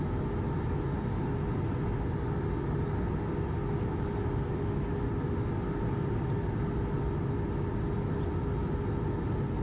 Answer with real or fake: real